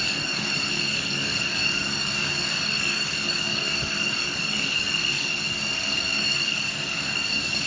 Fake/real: fake